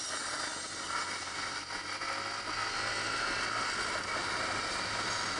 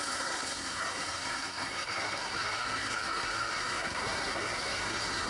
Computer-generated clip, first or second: second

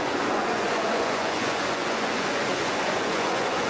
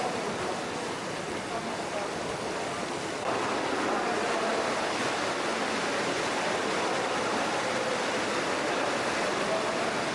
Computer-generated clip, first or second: first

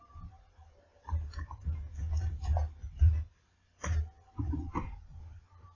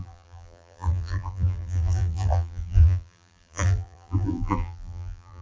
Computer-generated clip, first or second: second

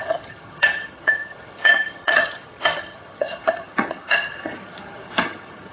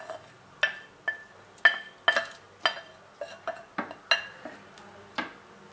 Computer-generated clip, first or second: first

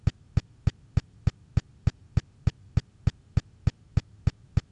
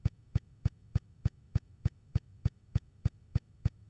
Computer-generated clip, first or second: second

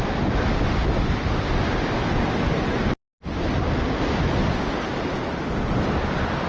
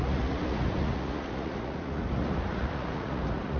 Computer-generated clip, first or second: second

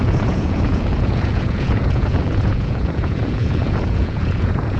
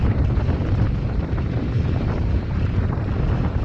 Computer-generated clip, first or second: first